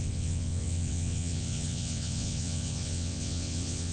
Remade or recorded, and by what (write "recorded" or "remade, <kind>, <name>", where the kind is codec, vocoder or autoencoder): remade, vocoder, WaveNeXt